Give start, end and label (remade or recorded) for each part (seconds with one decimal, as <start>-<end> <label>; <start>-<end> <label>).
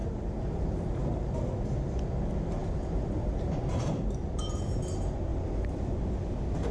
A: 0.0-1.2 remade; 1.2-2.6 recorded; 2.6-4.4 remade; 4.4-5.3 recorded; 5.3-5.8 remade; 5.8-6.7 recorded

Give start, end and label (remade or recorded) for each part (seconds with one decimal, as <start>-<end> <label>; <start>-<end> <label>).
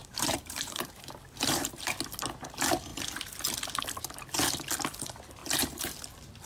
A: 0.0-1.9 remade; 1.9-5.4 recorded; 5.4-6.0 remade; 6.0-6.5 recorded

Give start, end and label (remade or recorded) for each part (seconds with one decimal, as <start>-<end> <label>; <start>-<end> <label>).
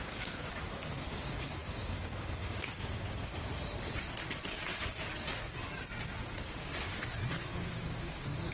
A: 0.0-0.5 remade; 0.5-1.1 recorded; 1.1-3.3 remade; 3.3-7.5 recorded; 7.5-8.5 remade